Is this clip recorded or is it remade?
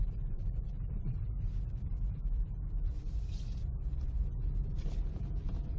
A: remade